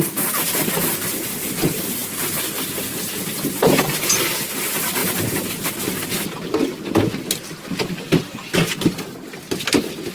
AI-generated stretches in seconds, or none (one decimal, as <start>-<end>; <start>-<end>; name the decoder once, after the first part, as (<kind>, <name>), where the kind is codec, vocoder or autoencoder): none